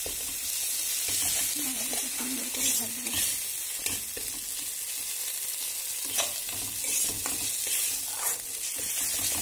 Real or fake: real